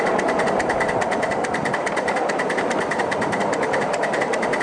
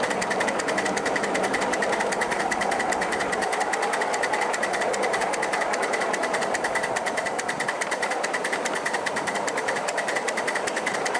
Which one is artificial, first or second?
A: second